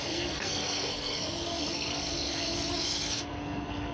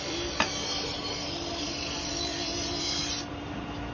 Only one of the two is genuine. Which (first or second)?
second